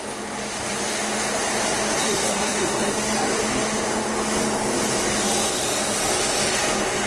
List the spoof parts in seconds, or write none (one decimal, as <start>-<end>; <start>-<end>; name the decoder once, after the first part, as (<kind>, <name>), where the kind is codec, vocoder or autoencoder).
2.0-2.9 (codec, SNAC)